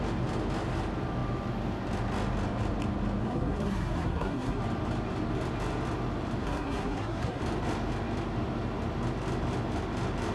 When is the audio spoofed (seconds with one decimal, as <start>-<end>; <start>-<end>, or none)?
3.2-4.6; 6.4-7.4